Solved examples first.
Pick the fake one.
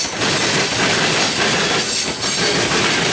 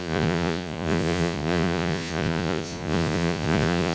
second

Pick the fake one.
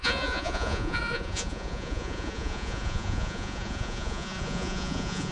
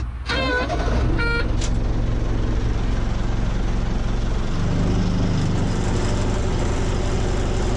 first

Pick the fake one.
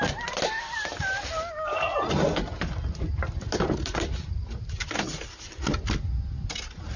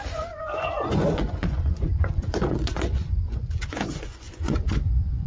second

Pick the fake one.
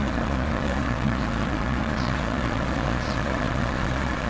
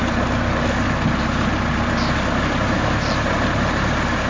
first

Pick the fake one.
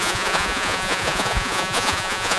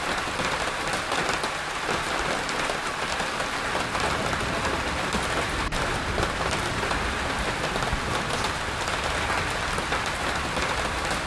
first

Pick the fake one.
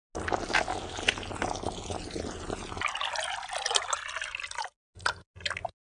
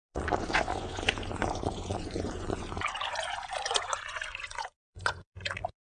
second